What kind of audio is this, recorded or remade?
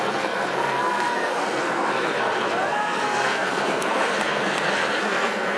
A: remade